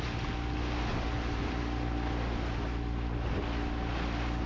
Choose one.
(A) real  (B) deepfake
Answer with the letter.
A